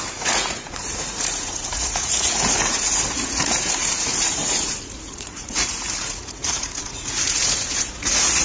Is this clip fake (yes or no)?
yes